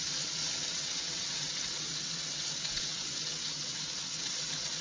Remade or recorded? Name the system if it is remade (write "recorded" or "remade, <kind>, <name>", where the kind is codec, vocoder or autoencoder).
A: remade, vocoder, WaveNeXt